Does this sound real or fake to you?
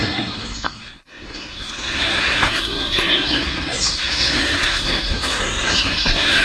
fake